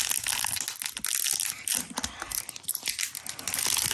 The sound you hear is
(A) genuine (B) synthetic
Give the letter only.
A